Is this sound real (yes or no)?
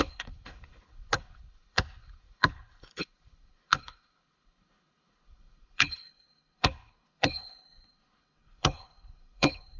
no